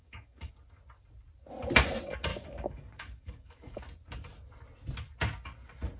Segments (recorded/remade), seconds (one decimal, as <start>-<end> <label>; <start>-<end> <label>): 0.0-0.5 remade; 0.5-2.3 recorded; 2.3-3.8 remade; 3.8-6.0 recorded